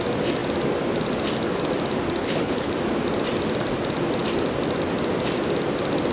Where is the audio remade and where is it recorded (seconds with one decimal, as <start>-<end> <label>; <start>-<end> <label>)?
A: 0.0-2.2 recorded; 2.2-2.7 remade; 2.7-6.1 recorded